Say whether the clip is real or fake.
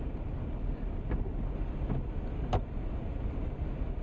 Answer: real